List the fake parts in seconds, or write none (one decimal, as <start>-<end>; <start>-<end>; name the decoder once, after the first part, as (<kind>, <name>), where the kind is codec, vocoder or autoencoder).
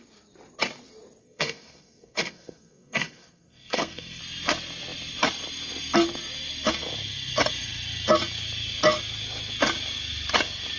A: 1.2-4.2 (codec, SNAC)